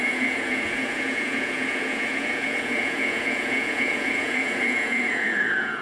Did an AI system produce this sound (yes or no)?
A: yes